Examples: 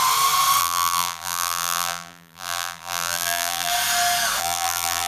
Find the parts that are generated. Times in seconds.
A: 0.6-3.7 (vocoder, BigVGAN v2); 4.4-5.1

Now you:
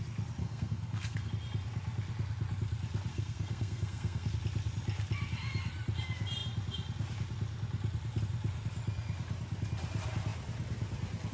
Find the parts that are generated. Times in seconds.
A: 0.4-1.3 (codec, SNAC); 3.1-4.3

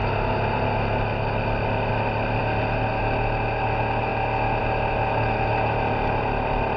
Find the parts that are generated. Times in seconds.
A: none

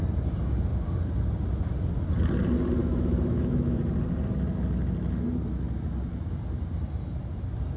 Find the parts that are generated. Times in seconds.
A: 2.8-3.8 (autoencoder, DAC-VAE)

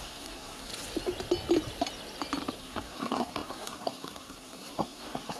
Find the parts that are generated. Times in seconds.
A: 0.0-0.7 (codec, SNAC); 2.6-5.4

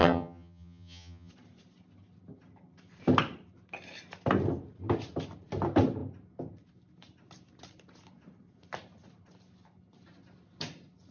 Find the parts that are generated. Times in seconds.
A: 0.0-1.3 (vocoder, HiFi-GAN)

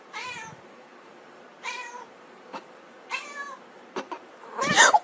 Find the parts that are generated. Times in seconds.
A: 0.0-5.0 (vocoder, BigVGAN v2)